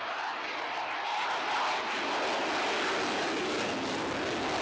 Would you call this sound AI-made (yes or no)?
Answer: no